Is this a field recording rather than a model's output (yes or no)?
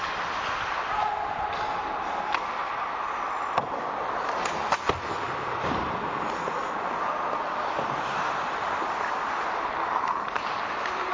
yes